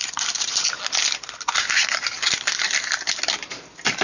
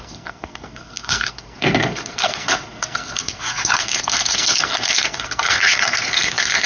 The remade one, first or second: second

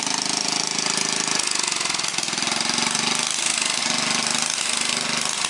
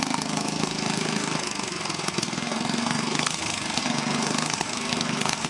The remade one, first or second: second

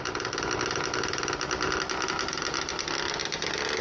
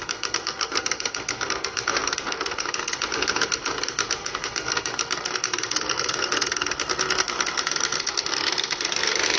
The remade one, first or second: second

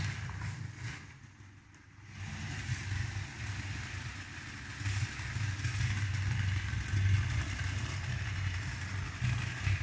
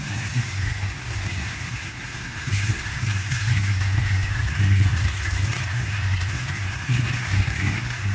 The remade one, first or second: second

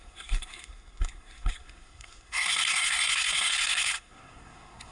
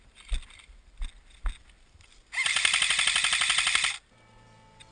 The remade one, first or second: first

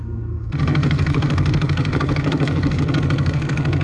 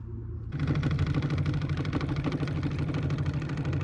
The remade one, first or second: first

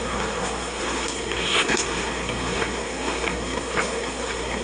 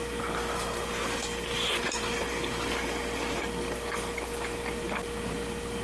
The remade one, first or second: first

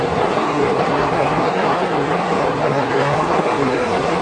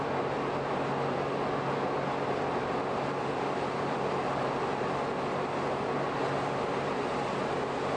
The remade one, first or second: first